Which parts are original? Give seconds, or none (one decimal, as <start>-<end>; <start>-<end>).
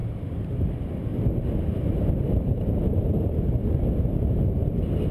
0.7-1.1; 4.2-5.1